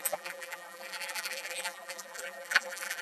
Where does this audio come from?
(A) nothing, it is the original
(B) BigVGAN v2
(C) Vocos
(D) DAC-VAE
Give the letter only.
B